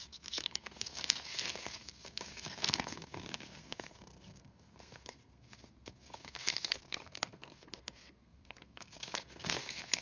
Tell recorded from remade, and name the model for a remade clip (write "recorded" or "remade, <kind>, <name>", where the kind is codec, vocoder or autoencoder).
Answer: remade, codec, SNAC